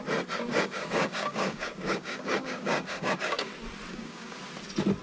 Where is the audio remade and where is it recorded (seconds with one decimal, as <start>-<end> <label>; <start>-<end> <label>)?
0.0-0.5 recorded; 0.5-3.5 remade; 3.5-3.9 recorded; 3.9-4.4 remade; 4.4-5.0 recorded